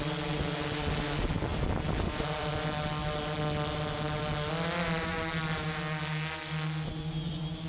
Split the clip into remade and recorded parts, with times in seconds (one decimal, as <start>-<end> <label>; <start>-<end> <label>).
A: 0.0-1.5 recorded; 1.5-2.5 remade; 2.5-7.7 recorded